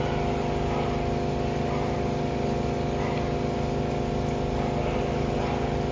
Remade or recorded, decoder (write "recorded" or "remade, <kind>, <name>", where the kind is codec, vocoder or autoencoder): recorded